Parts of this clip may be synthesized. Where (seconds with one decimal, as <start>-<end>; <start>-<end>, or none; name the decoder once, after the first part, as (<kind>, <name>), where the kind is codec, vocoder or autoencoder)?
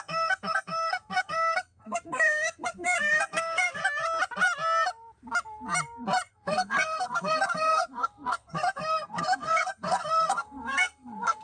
0.0-3.8 (codec, SNAC); 6.3-11.4